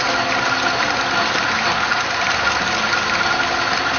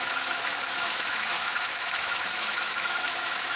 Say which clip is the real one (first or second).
first